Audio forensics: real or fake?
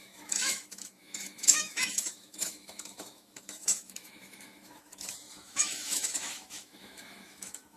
fake